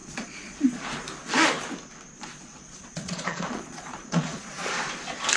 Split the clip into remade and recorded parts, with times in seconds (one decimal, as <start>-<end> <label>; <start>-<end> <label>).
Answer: 0.0-0.8 remade; 0.8-2.3 recorded; 2.3-4.7 remade; 4.7-5.4 recorded